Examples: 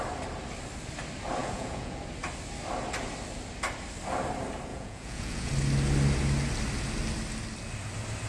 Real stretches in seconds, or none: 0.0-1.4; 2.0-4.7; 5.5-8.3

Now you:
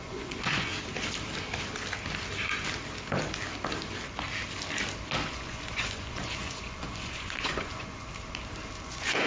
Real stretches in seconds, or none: 0.7-5.3; 8.1-8.8

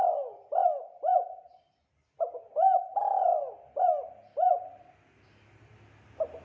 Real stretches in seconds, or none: 0.0-6.4

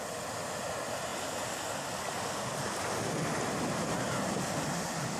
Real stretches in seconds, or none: 0.0-5.2